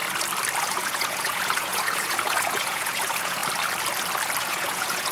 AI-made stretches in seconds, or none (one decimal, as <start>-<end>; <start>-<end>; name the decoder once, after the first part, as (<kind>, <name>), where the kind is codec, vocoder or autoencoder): 0.6-3.4 (vocoder, Vocos); 4.4-5.1